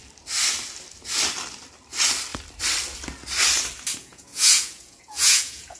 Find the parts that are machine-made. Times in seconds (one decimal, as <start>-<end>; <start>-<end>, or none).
4.0-5.8